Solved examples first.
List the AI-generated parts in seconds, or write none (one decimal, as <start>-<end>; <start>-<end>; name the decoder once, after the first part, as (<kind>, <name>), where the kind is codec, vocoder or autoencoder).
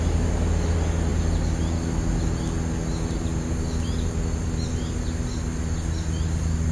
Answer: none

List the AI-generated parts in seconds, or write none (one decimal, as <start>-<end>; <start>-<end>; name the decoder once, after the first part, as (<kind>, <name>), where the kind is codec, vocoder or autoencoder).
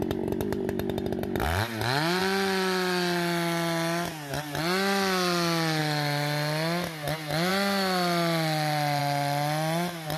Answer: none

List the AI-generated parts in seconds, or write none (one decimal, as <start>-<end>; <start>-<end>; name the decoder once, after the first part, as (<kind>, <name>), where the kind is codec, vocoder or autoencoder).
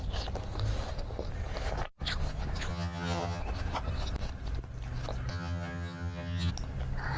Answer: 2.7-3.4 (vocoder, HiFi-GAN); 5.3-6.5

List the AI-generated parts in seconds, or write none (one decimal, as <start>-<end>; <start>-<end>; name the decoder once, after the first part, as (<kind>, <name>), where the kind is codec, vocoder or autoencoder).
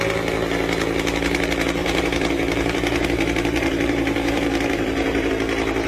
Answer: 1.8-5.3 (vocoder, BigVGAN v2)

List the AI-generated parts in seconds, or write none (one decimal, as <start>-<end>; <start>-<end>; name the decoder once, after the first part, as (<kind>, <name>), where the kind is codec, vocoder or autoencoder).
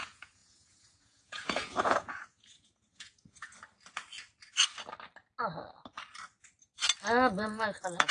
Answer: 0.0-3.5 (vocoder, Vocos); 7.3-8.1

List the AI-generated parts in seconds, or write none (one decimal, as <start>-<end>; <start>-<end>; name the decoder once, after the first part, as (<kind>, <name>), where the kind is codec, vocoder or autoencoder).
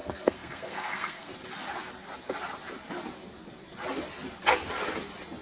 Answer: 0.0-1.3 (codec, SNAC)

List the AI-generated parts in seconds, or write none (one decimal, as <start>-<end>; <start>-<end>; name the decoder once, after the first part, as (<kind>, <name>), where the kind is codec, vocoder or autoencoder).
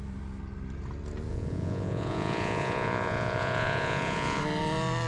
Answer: 1.3-4.4 (vocoder, Vocos)